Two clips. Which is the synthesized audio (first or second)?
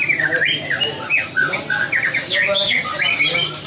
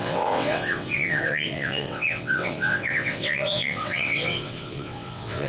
second